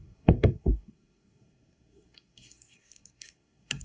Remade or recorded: remade